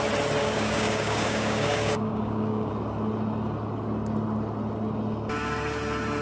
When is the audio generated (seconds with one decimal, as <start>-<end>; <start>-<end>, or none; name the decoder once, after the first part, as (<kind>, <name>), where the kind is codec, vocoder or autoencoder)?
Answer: 0.4-2.7 (codec, DAC)